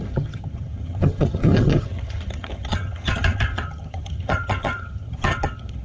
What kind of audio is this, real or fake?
fake